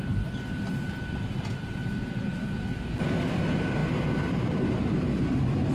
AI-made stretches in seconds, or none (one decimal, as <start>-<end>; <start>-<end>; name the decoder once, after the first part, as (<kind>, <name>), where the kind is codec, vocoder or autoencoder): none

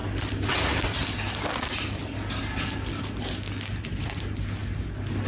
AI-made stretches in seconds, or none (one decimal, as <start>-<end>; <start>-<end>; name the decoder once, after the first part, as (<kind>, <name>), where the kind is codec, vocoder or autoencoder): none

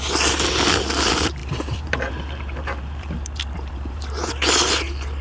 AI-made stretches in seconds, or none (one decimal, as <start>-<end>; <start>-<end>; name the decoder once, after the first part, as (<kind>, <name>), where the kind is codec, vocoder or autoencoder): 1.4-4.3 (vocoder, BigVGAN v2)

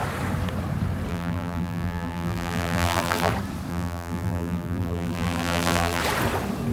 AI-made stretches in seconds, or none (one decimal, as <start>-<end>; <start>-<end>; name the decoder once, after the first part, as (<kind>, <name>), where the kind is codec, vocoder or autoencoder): 1.1-3.3 (vocoder, BigVGAN v2); 3.7-6.0

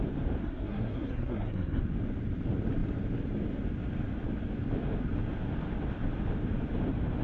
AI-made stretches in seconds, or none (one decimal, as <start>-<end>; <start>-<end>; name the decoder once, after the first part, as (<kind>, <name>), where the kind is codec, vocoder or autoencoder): 0.4-1.8 (codec, SNAC)